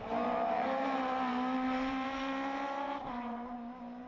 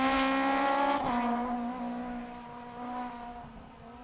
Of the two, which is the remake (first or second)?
first